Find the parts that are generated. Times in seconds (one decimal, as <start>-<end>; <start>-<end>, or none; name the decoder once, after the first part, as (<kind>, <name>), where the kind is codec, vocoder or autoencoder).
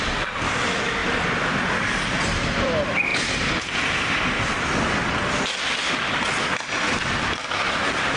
0.0-3.1 (vocoder, BigVGAN v2); 7.7-8.2